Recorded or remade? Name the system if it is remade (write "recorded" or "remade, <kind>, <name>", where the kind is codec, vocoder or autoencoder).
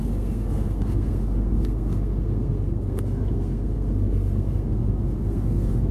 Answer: remade, codec, SNAC